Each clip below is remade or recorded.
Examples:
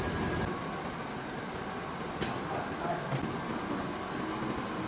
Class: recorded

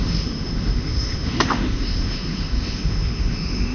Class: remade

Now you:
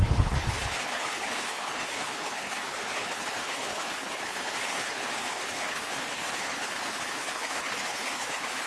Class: remade